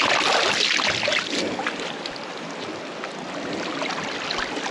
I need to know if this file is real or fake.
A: real